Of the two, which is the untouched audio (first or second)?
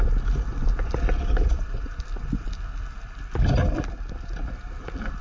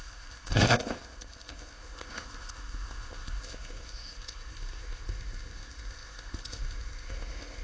first